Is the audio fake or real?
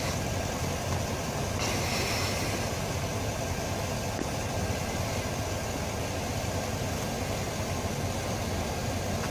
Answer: real